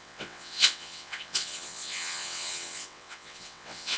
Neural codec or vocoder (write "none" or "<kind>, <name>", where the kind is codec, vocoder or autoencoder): vocoder, WaveNeXt